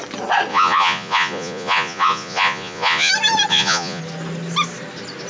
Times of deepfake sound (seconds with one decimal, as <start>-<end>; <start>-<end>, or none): 0.5-3.1; 3.5-4.0